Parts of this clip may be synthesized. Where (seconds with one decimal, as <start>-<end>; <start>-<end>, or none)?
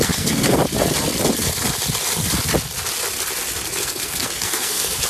0.0-0.6; 3.7-5.1